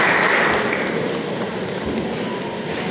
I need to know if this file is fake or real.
real